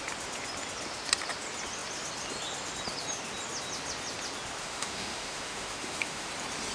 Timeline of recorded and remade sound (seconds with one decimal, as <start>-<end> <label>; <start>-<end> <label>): 0.0-4.6 recorded; 4.6-6.3 remade; 6.3-6.7 recorded